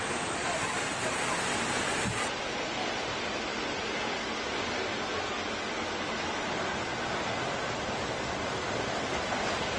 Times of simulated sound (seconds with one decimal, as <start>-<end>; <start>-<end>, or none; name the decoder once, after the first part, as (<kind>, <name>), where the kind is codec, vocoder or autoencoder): none